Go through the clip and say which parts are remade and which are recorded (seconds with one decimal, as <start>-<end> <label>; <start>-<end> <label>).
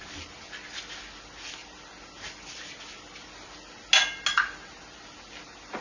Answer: 0.0-5.8 recorded